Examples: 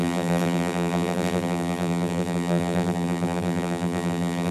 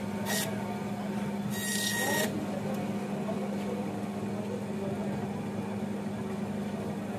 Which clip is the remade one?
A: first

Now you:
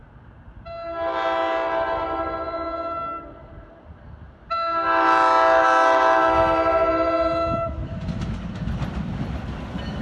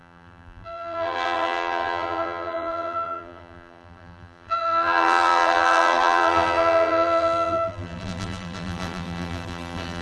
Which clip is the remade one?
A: second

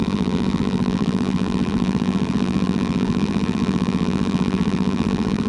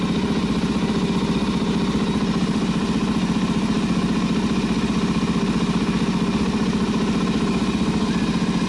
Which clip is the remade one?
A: first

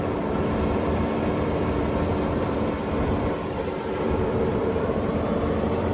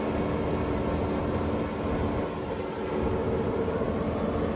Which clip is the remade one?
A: first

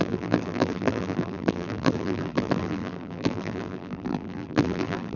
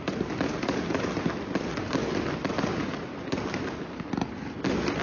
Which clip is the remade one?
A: first